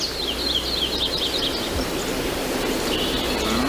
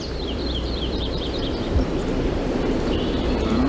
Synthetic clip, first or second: second